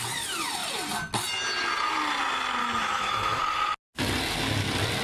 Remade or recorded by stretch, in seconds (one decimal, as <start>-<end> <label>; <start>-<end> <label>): 0.0-2.6 recorded; 2.6-3.4 remade; 3.4-5.0 recorded